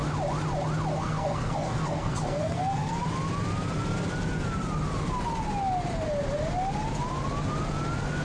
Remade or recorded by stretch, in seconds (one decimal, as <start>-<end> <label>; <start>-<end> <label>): 0.0-0.9 recorded; 0.9-3.0 remade; 3.0-8.2 recorded